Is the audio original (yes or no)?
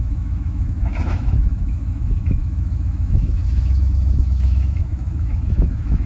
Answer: no